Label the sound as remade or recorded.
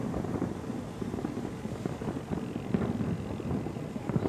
recorded